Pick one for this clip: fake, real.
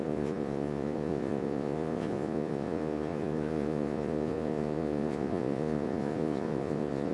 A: fake